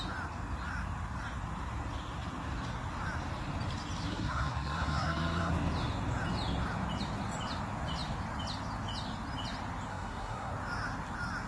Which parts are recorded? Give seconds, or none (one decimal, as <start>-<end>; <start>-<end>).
0.0-4.1; 5.5-9.9; 10.5-11.5

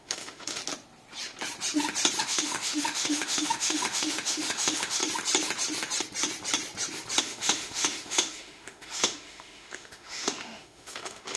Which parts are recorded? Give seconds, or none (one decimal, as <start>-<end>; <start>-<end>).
0.6-2.2; 5.0-7.2

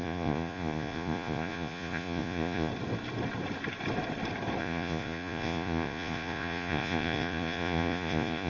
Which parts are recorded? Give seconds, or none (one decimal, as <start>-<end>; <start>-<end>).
2.7-4.6

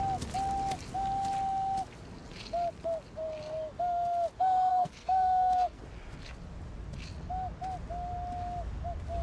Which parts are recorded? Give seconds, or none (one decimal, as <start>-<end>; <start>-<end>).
0.0-4.7; 5.8-9.2